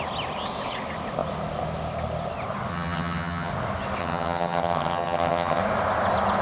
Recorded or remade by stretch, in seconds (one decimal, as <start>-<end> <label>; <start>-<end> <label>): 0.0-2.7 recorded; 2.7-3.5 remade; 3.5-4.0 recorded; 4.0-5.6 remade; 5.6-6.4 recorded